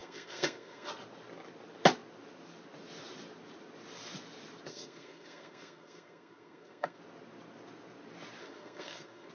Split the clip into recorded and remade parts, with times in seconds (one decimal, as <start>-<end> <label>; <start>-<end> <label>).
0.0-0.9 remade; 0.9-4.7 recorded; 4.7-7.0 remade; 7.0-8.4 recorded; 8.4-9.3 remade